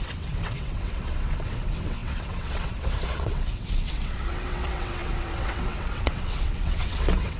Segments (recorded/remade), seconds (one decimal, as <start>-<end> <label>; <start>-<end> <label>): 0.0-7.4 remade